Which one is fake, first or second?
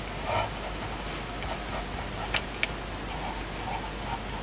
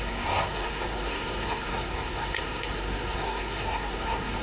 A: second